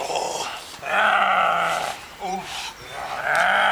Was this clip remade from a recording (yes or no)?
yes